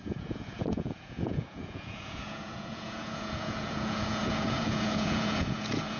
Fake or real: fake